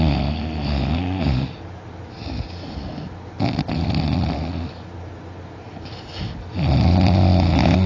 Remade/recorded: recorded